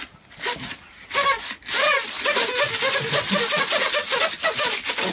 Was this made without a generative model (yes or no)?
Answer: yes